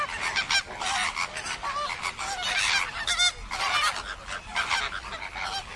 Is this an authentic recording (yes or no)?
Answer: yes